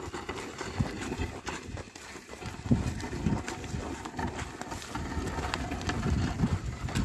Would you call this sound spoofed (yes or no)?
no